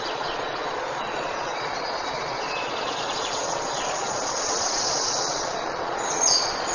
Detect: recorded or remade remade